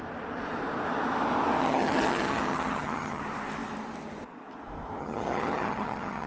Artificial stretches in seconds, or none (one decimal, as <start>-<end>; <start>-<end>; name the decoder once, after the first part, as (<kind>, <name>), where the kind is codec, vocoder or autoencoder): 1.6-3.2 (vocoder, HiFi-GAN); 5.0-6.3